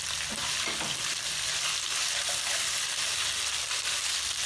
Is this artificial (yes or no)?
no